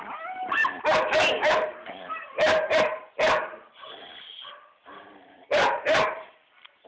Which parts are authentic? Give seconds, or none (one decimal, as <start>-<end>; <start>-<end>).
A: 0.0-0.6; 2.8-4.9; 6.3-6.9